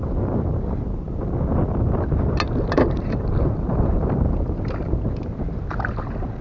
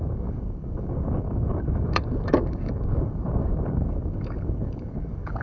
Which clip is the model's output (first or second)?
second